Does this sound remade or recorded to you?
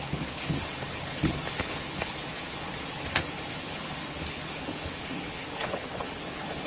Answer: remade